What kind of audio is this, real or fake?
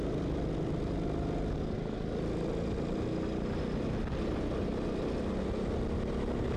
real